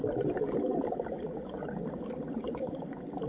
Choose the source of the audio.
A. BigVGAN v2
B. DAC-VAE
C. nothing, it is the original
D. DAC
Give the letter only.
C